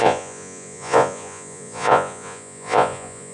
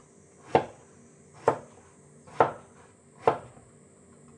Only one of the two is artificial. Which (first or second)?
first